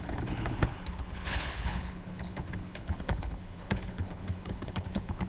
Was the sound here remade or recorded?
remade